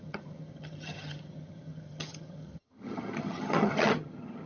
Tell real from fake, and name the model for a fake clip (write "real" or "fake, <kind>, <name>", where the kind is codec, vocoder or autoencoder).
fake, vocoder, HiFi-GAN